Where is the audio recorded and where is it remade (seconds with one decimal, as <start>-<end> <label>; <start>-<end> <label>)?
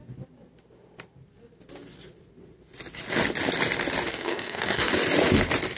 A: 0.0-4.1 recorded; 4.1-4.9 remade; 4.9-5.8 recorded